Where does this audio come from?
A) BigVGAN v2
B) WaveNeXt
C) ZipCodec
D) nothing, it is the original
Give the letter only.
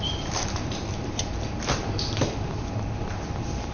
A